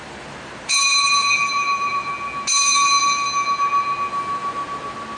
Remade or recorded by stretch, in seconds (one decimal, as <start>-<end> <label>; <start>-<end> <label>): 0.0-2.1 remade; 2.1-5.2 recorded